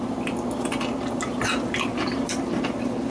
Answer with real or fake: real